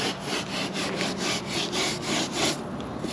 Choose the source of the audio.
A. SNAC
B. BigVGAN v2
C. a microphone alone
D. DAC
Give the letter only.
C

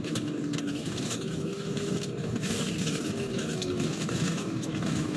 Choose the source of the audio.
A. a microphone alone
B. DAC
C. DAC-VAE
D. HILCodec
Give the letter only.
B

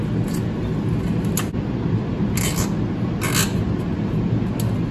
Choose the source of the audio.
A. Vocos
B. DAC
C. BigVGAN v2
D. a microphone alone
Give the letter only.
D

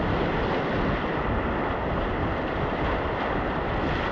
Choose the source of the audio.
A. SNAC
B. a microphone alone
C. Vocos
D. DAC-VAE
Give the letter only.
B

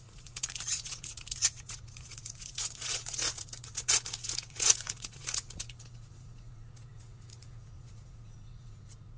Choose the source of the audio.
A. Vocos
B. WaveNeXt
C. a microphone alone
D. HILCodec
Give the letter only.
A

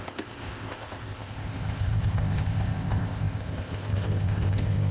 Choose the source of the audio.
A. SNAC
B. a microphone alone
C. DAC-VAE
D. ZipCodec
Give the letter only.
D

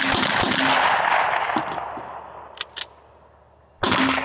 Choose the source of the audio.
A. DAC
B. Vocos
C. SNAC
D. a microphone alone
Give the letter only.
D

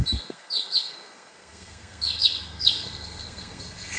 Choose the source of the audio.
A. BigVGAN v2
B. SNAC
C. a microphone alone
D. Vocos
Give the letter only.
B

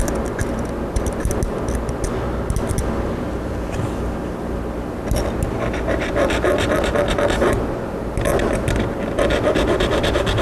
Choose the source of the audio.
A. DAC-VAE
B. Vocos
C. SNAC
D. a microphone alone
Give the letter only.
D